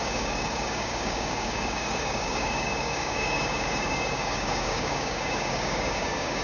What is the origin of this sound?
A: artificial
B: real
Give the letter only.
A